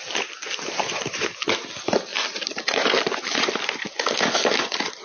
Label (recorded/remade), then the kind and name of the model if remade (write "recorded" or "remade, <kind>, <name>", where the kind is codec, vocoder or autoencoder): recorded